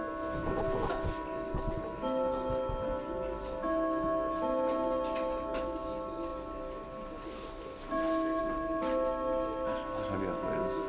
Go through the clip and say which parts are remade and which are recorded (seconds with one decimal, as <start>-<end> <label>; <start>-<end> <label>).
0.0-10.9 recorded